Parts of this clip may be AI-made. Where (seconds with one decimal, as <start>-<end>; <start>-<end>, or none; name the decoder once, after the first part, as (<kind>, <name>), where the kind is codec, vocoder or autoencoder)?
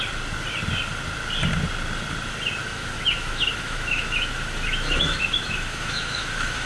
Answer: 2.6-6.7 (autoencoder, DAC-VAE)